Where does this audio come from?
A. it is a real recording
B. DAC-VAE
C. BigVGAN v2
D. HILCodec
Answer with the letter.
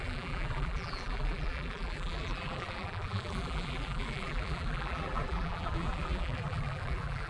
C